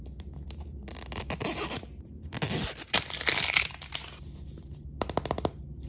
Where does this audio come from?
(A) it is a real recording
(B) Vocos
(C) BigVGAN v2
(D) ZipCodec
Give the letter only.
A